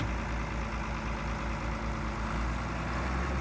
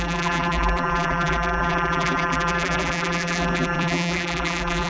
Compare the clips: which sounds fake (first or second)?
second